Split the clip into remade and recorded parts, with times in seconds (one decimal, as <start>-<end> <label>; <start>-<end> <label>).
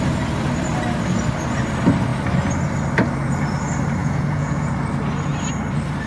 0.0-4.0 recorded; 4.0-4.7 remade; 4.7-6.1 recorded